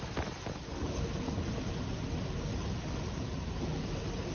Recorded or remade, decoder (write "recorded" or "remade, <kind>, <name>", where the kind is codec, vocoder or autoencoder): recorded